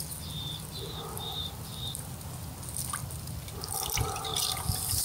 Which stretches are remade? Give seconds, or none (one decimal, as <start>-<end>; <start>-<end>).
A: none

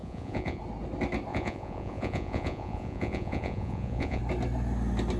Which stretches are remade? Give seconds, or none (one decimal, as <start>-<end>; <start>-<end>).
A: 0.0-0.6; 1.3-4.2